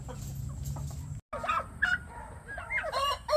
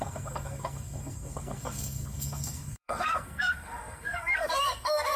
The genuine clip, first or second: first